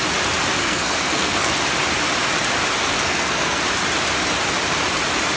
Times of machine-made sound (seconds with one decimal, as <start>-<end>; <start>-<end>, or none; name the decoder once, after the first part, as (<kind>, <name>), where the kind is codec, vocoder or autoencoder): 0.6-1.5 (codec, SNAC); 2.8-3.6